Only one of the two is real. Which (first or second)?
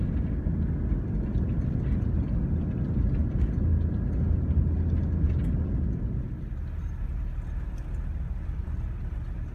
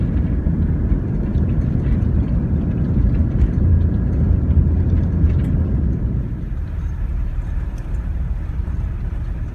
first